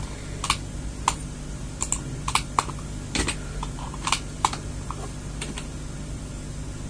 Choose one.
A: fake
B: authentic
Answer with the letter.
B